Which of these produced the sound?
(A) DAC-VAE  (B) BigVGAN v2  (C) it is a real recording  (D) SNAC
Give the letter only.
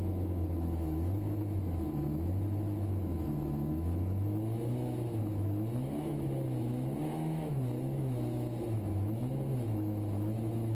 A